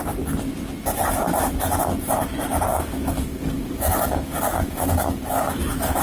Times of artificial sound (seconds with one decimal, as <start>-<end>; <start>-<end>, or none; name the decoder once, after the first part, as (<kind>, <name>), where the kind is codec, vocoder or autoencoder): 2.7-6.0 (codec, DAC)